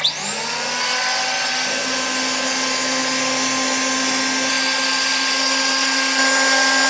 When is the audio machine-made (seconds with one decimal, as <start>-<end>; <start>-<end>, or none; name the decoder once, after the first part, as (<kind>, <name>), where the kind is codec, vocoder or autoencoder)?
none